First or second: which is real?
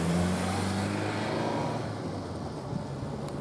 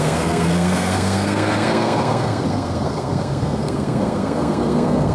first